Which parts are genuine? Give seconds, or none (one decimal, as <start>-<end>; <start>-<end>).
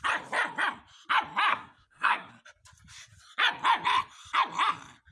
0.0-1.5; 2.3-5.1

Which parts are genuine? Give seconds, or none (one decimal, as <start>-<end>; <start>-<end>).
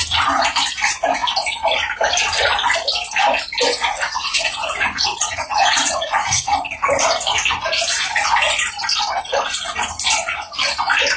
0.0-3.8; 6.4-11.2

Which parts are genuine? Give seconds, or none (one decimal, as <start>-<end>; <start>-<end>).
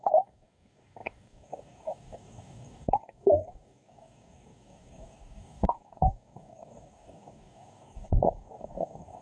none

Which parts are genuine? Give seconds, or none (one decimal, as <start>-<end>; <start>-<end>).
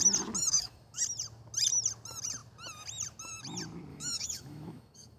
0.0-0.5; 1.0-3.9